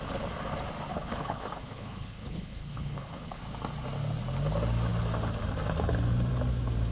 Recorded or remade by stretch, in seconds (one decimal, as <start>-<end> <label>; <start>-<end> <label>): 0.0-0.9 recorded; 0.9-3.4 remade; 3.4-6.9 recorded